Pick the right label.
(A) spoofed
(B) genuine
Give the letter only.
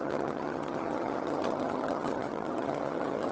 A